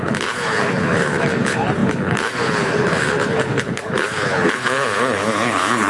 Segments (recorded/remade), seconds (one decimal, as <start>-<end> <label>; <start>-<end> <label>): 0.0-5.9 remade